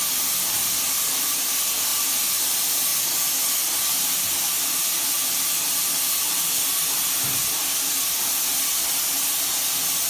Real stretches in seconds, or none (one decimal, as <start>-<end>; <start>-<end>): 0.0-10.1